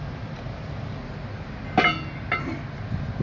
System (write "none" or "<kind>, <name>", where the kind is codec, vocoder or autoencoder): none